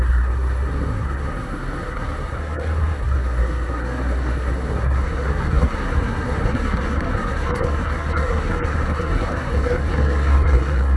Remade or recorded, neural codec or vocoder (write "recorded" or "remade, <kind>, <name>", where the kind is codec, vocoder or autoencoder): remade, codec, SNAC